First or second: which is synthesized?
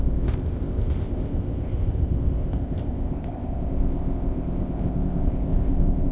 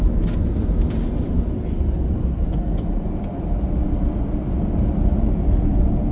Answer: first